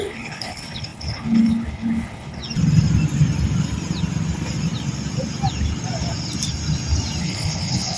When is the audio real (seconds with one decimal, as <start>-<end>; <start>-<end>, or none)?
2.4-7.2